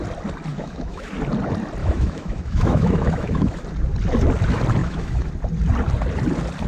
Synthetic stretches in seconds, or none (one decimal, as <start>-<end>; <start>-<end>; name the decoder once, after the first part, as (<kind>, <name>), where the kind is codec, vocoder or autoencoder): 0.5-1.1 (autoencoder, DAC-VAE); 1.8-3.6; 4.8-5.3